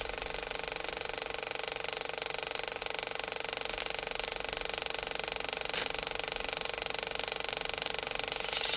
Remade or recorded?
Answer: recorded